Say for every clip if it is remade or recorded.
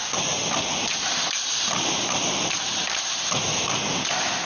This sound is recorded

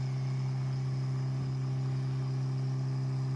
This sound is recorded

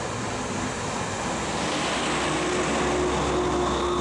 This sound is recorded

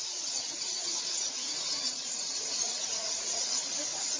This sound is remade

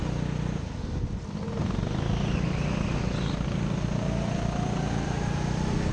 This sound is recorded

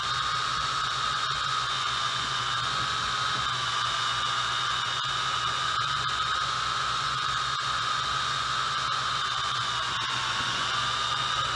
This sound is remade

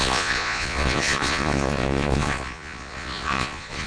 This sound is remade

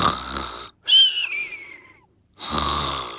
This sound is recorded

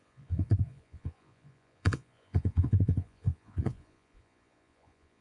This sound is remade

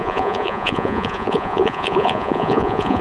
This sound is remade